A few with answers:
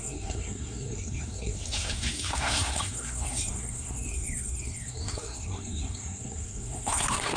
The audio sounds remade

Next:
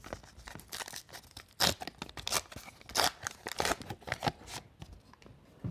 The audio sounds recorded